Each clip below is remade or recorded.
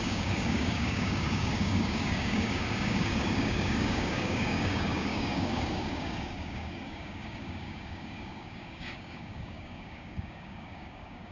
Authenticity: remade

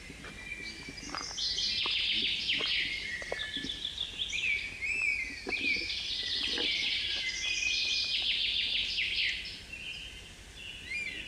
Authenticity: recorded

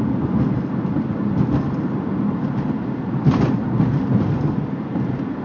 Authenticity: recorded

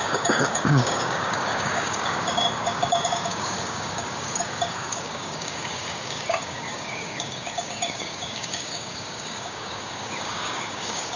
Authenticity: remade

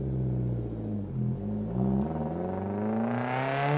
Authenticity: recorded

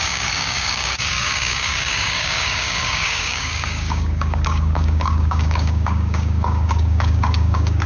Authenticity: remade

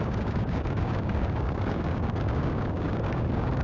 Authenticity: remade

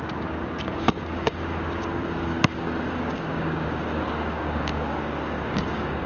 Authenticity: remade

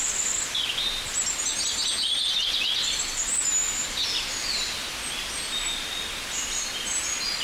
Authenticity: recorded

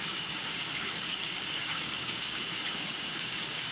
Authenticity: remade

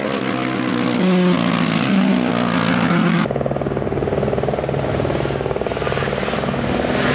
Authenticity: recorded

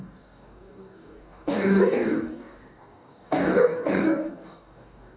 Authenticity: remade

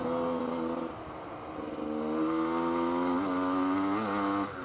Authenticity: recorded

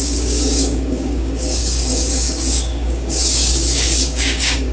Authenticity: remade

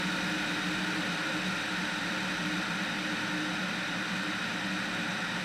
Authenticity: recorded